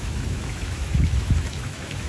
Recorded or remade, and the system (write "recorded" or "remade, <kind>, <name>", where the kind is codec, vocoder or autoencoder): remade, autoencoder, DAC-VAE